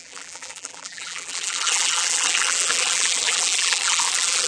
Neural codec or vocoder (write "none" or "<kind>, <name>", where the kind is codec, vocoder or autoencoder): vocoder, BigVGAN v2